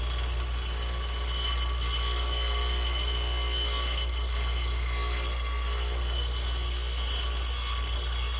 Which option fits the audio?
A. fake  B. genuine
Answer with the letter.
B